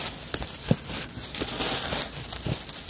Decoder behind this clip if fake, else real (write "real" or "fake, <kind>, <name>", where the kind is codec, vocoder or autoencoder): real